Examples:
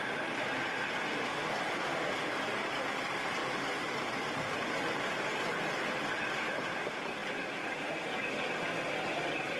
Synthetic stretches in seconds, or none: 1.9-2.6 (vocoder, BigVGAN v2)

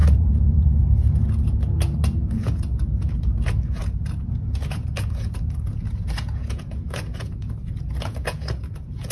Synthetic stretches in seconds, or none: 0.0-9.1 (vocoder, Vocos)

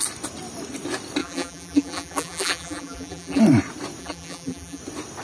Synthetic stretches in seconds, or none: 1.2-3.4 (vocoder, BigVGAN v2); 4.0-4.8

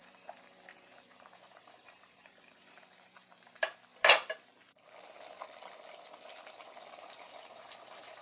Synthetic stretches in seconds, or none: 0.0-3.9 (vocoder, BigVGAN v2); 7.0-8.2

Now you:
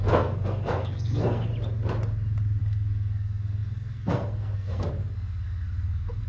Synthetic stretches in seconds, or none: 0.0-1.5 (codec, SNAC); 2.6-6.3

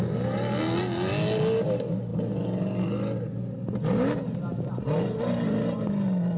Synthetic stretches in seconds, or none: none